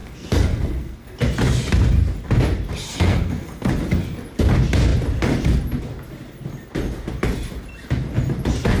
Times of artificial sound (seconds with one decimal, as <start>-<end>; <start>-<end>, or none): 0.0-1.2; 2.9-3.7